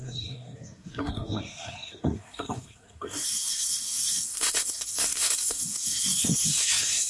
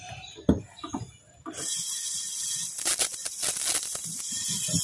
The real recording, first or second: second